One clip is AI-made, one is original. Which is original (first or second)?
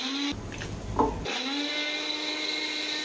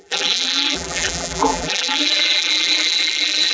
first